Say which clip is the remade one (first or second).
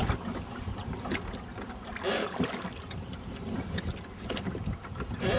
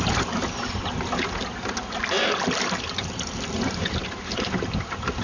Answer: first